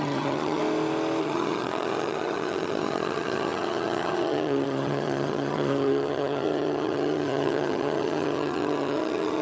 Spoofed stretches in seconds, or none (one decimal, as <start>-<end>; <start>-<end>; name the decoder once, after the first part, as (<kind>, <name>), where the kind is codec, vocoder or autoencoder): 0.0-0.6 (vocoder, HiFi-GAN); 1.2-9.4